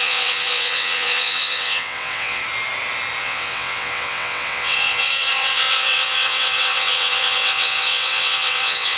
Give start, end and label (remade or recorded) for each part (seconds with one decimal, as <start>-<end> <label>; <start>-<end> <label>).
0.0-2.4 remade; 2.4-3.2 recorded; 3.2-9.0 remade